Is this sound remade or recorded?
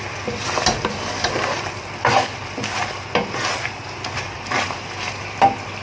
recorded